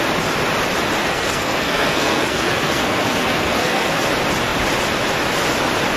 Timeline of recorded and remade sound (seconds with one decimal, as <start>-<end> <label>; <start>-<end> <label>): 0.0-1.0 recorded; 1.0-4.1 remade; 4.1-6.0 recorded